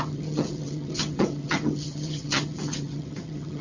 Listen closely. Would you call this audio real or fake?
fake